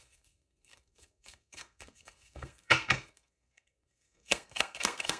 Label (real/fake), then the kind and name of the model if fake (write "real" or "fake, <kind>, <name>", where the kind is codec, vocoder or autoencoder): fake, codec, SNAC